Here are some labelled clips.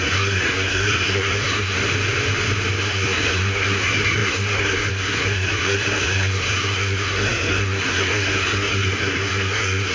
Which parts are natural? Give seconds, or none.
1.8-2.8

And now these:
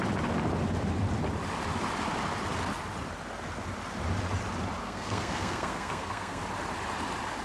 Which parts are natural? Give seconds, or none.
0.0-4.8; 6.4-7.4

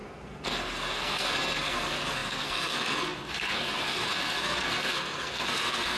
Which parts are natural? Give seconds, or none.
none